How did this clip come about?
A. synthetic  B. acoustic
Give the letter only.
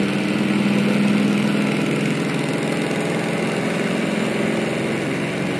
B